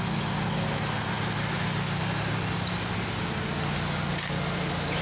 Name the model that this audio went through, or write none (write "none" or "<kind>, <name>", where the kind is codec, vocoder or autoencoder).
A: none